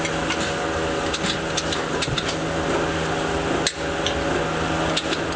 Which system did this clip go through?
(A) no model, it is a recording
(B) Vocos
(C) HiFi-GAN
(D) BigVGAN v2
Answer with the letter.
A